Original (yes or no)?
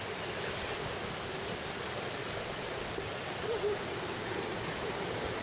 yes